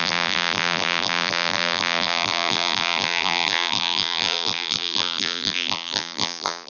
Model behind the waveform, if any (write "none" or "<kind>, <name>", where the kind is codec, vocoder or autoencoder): vocoder, BigVGAN v2